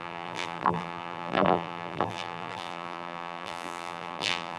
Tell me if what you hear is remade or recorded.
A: remade